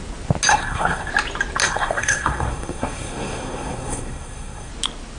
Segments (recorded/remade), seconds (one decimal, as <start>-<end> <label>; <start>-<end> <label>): 0.0-0.5 recorded; 0.5-1.1 remade; 1.1-1.6 recorded; 1.6-4.7 remade; 4.7-5.2 recorded